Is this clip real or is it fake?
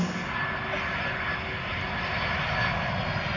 real